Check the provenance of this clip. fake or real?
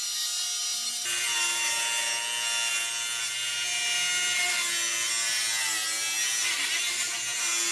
real